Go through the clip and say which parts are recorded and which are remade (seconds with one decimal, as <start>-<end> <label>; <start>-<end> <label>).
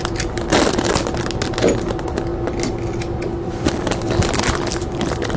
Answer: 0.0-5.4 recorded